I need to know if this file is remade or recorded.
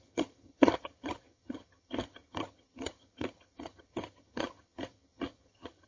remade